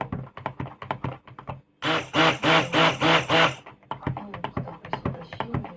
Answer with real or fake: real